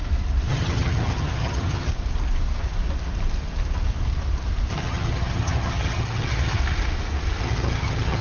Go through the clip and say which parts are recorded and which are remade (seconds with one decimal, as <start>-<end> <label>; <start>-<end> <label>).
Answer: 0.0-0.5 recorded; 0.5-1.9 remade; 1.9-4.7 recorded; 4.7-6.6 remade; 6.6-7.4 recorded; 7.4-8.2 remade